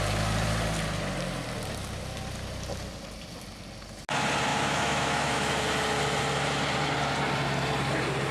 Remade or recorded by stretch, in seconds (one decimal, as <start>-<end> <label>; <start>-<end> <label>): 0.0-4.5 recorded; 4.5-5.5 remade; 5.5-8.3 recorded